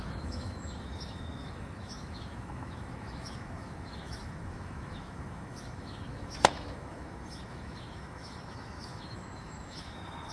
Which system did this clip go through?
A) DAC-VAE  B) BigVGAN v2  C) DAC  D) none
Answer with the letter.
A